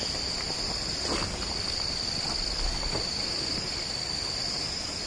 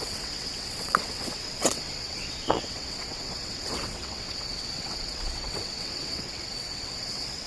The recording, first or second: first